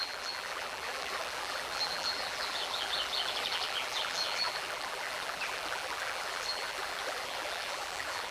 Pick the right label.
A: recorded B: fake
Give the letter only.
B